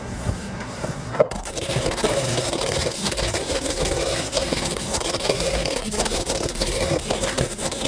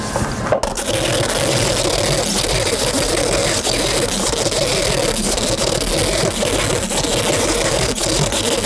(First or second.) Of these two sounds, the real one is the second